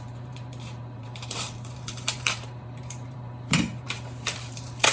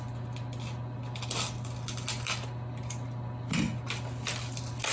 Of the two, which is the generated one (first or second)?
first